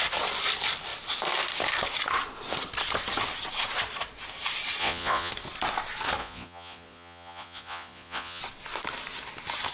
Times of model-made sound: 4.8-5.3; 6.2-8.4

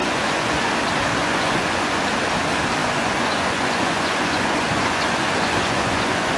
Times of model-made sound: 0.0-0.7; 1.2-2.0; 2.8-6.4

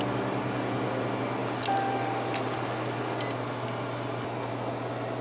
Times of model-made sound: none

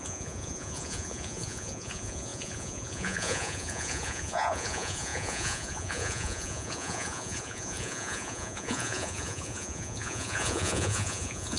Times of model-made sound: 0.0-11.6

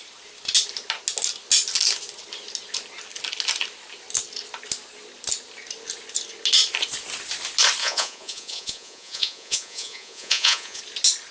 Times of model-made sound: 7.8-10.8